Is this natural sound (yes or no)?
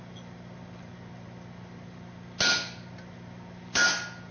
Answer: yes